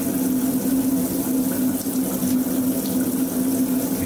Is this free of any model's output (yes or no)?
yes